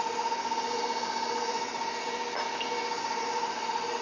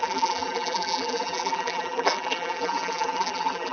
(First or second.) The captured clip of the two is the first